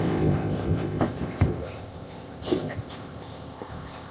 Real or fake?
fake